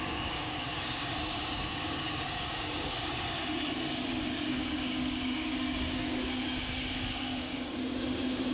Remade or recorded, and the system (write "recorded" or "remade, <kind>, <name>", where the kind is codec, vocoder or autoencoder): remade, codec, DAC